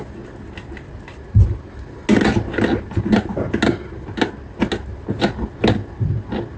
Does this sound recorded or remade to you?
recorded